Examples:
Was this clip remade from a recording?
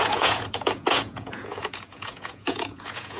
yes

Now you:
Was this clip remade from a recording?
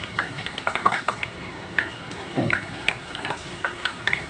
yes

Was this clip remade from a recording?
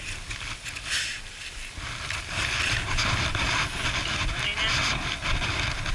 no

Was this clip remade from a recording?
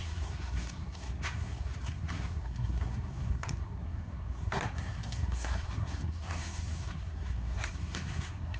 yes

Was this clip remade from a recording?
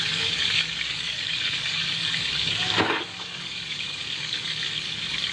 yes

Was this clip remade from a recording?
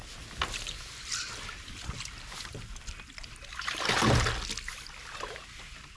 no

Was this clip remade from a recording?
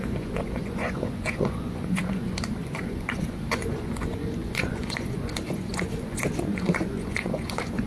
yes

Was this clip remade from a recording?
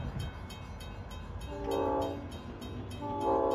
no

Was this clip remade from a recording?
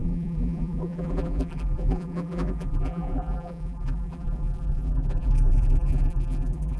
yes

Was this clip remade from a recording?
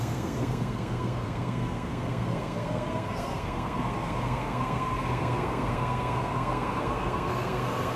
yes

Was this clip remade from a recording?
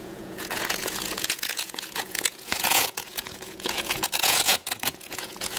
yes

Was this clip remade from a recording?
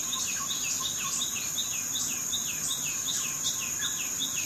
no